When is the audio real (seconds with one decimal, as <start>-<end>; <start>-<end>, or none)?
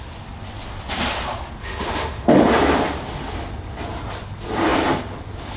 0.0-1.6; 2.4-5.6